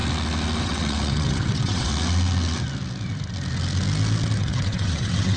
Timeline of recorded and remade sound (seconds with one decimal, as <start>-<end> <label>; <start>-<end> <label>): 0.0-0.6 recorded; 0.6-1.9 remade; 1.9-4.4 recorded; 4.4-5.4 remade